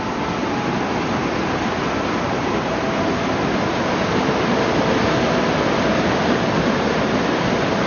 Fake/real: real